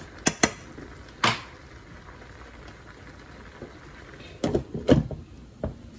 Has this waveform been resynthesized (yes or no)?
no